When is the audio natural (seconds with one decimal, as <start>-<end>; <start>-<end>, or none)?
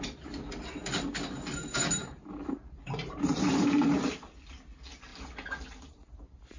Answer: 0.0-2.0; 4.2-6.6